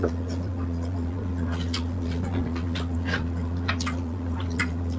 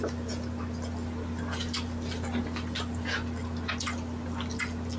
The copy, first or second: first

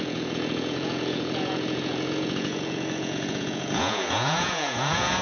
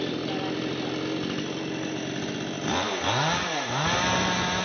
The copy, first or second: first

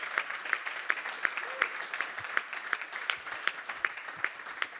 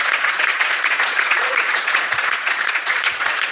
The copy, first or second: second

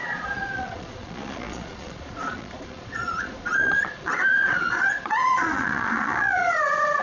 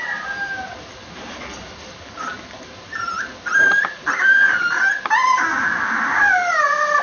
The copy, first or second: first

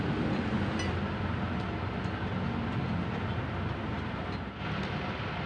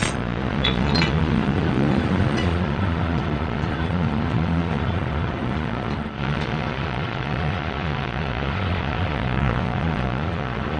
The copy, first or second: second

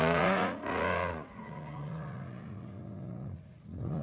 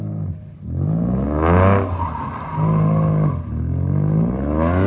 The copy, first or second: first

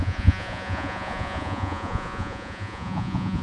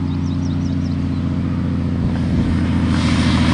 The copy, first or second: first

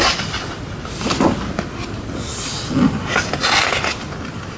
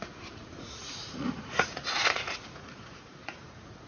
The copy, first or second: second